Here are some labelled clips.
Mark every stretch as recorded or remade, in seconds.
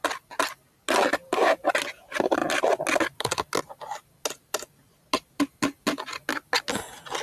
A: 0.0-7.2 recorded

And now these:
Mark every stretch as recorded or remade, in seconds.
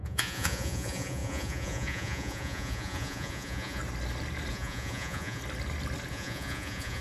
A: 0.0-3.8 remade; 3.8-4.5 recorded; 4.5-5.4 remade; 5.4-6.1 recorded; 6.1-7.0 remade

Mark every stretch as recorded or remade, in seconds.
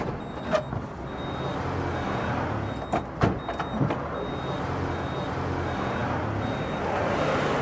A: 0.0-7.6 recorded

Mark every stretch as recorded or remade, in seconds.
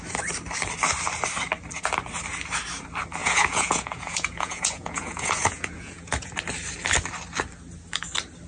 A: 0.0-3.2 recorded; 3.2-6.3 remade; 6.3-8.5 recorded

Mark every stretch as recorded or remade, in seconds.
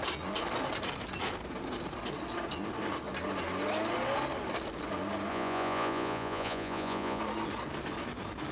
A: 0.0-5.3 recorded; 5.3-7.2 remade; 7.2-8.5 recorded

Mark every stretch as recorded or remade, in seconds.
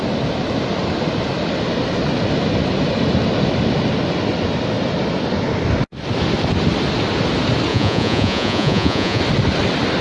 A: 0.0-7.7 recorded; 7.7-9.2 remade; 9.2-10.0 recorded